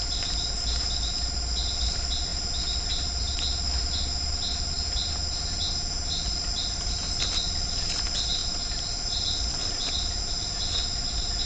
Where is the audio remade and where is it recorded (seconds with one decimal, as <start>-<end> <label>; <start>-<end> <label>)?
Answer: 0.0-11.5 recorded